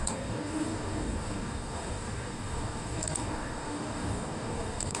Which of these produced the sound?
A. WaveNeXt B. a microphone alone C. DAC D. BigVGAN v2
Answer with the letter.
C